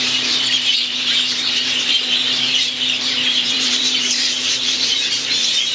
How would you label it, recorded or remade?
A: remade